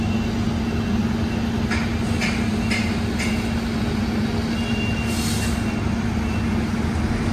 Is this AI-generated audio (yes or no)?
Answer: no